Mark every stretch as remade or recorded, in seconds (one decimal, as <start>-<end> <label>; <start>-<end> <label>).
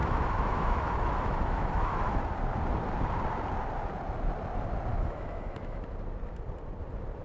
0.0-2.2 remade; 2.2-4.9 recorded; 4.9-5.8 remade; 5.8-7.2 recorded